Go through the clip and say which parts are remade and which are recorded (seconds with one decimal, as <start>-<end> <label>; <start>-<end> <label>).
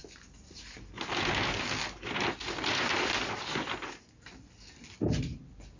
0.0-5.8 recorded